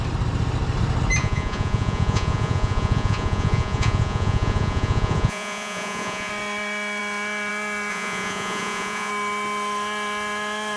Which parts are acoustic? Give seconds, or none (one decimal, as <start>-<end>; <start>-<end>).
0.0-1.2; 6.3-7.9; 9.1-10.8